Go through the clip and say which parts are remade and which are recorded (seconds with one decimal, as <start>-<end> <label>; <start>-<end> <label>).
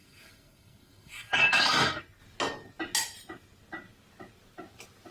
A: 0.0-2.0 remade; 2.0-5.1 recorded